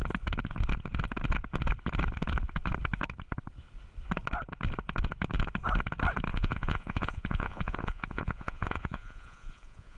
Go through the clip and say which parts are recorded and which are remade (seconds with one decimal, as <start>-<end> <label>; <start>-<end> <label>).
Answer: 0.0-6.3 recorded; 6.3-10.0 remade

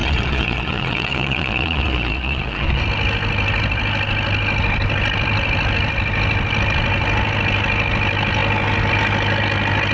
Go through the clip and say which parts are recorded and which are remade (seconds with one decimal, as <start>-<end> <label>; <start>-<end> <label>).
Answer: 0.0-2.8 remade; 2.8-9.9 recorded

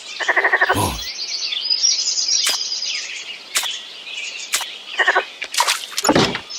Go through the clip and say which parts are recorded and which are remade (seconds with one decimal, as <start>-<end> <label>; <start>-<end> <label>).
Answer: 0.0-6.6 recorded

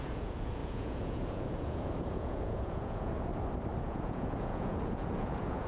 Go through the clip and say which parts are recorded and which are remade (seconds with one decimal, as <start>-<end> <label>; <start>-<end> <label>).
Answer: 0.0-3.3 remade; 3.3-3.8 recorded; 3.8-5.7 remade

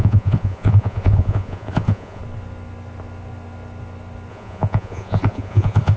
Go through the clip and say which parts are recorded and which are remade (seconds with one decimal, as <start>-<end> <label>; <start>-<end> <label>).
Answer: 0.0-2.2 remade; 2.2-4.3 recorded; 4.3-6.0 remade

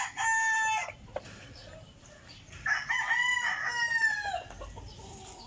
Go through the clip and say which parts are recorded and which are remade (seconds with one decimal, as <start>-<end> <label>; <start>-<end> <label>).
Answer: 0.0-5.5 recorded